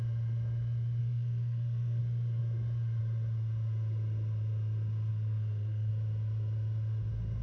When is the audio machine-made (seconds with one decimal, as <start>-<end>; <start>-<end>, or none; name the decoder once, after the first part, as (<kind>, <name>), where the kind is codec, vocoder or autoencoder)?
1.0-2.0 (codec, SNAC); 5.1-5.9